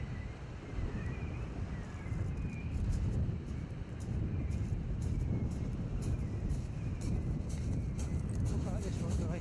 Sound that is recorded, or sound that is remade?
remade